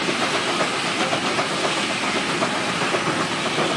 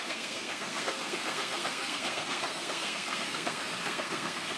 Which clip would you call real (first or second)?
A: first